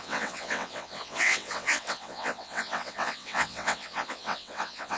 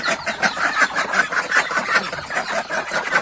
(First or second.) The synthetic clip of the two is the first